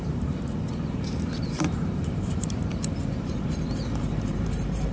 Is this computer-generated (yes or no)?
yes